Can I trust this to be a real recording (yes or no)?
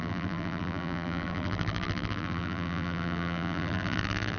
no